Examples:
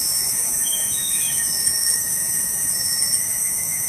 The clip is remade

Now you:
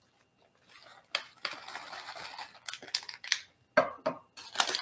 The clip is recorded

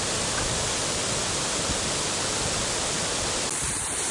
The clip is recorded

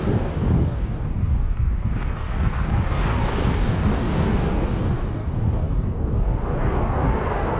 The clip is remade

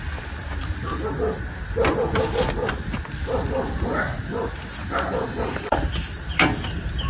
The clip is recorded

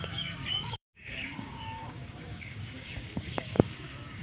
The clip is remade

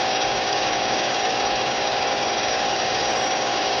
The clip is remade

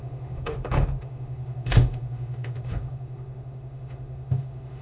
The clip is remade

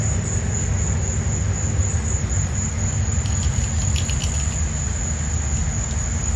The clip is recorded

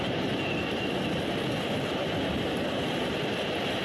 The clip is remade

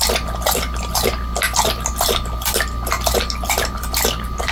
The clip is recorded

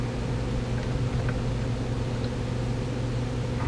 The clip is recorded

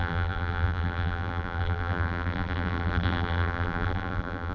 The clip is remade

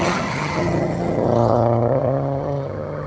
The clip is remade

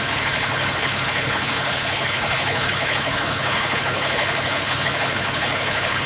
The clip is remade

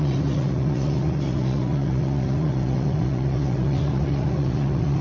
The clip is remade